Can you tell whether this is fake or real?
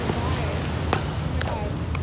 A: real